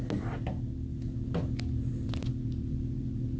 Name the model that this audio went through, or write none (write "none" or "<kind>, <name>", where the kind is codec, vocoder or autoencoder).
none